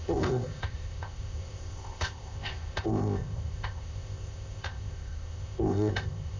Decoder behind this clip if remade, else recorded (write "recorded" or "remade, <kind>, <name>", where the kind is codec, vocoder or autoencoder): remade, codec, ZipCodec